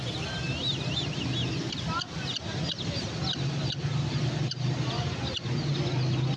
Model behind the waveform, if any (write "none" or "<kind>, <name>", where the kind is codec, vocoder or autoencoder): none